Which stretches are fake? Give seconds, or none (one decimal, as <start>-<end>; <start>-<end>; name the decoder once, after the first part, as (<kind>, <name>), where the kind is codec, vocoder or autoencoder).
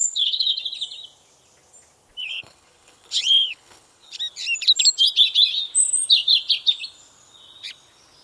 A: 0.0-0.6 (codec, HILCodec); 2.2-4.2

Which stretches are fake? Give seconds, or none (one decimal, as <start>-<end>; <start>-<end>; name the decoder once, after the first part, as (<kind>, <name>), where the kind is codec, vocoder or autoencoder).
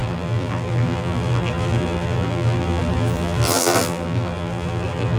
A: 0.0-5.2 (vocoder, BigVGAN v2)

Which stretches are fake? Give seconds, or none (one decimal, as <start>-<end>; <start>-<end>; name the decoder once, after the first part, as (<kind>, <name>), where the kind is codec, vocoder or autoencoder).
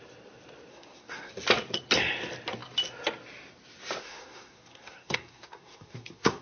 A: 0.7-1.3 (codec, SNAC); 4.0-6.4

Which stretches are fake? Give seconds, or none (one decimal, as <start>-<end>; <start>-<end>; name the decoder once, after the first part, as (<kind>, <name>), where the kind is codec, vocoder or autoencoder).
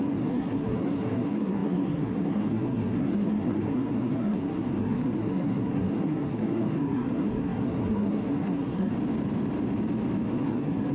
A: 0.0-8.9 (codec, SNAC); 10.3-10.9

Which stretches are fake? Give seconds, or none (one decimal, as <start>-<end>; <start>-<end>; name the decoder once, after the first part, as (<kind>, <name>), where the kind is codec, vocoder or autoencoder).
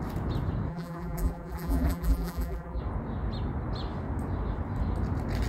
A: 0.7-2.8 (vocoder, BigVGAN v2)